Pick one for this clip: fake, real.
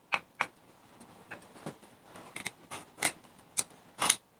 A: fake